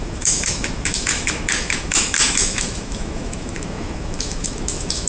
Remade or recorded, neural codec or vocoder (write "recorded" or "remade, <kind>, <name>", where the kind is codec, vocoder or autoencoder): remade, autoencoder, DAC-VAE